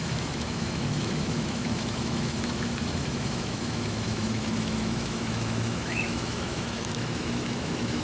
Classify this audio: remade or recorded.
remade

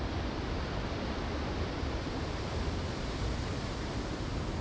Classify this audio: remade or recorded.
remade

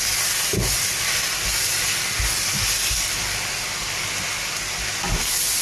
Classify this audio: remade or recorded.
recorded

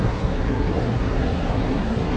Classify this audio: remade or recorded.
remade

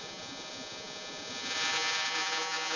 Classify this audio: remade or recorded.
remade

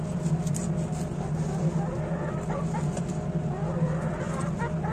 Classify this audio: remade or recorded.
recorded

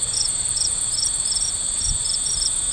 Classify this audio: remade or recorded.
remade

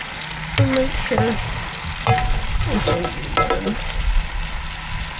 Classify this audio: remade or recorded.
recorded